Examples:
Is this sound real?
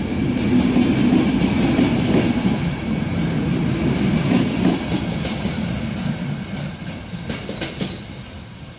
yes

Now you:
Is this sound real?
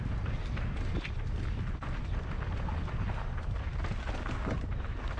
yes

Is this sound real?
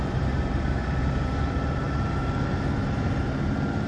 no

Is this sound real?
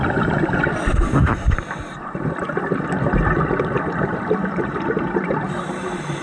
yes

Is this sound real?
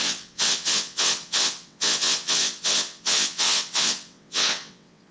no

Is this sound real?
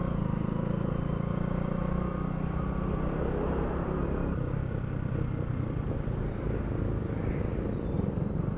yes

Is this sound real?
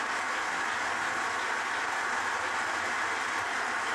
yes